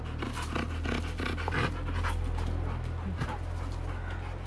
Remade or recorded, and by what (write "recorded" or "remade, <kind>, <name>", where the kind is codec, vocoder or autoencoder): recorded